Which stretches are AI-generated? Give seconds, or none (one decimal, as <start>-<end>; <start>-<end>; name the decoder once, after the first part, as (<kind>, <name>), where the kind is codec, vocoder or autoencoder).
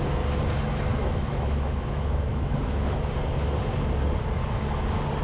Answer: 0.9-3.1 (autoencoder, DAC-VAE)